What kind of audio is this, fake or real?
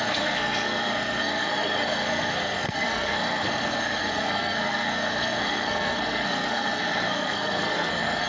fake